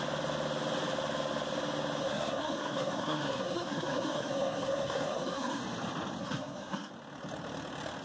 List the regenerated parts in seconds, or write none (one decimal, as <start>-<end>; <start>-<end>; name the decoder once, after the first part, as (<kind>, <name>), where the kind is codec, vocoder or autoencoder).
2.0-5.6 (codec, SNAC); 6.2-6.9